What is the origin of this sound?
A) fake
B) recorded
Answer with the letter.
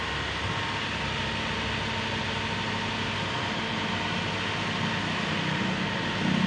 B